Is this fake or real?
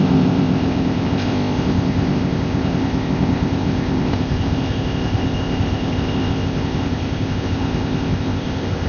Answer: fake